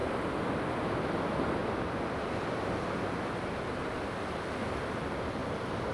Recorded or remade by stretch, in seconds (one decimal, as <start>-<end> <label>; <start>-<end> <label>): 0.0-5.9 recorded